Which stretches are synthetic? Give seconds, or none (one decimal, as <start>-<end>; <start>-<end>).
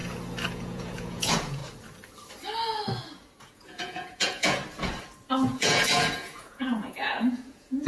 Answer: 0.5-1.6; 3.4-4.6; 5.5-7.9